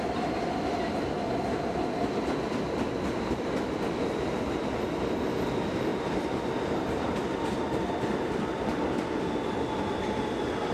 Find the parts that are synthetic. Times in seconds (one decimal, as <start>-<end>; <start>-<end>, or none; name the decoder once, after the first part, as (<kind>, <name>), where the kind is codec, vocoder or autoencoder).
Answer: none

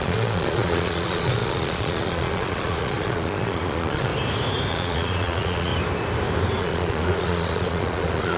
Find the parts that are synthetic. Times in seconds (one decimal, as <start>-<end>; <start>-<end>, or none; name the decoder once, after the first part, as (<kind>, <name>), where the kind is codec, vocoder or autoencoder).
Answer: 0.0-4.1 (vocoder, Vocos); 4.7-5.7; 6.6-8.4

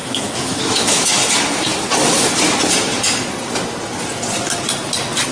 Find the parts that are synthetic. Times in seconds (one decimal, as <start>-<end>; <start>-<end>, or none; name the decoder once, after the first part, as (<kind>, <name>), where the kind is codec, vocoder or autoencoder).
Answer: 0.0-1.1 (autoencoder, DAC-VAE)

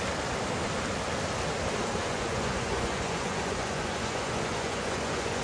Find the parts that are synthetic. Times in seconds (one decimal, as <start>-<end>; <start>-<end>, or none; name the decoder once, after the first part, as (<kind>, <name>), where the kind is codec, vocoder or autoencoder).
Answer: 2.0-5.4 (vocoder, Vocos)

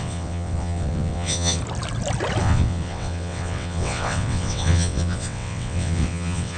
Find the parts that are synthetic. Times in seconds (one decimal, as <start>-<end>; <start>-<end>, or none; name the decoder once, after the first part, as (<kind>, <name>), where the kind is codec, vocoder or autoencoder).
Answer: 0.0-1.6 (vocoder, WaveNeXt); 2.4-6.6